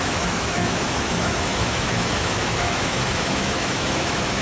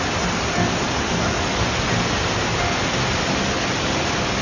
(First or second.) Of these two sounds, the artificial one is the first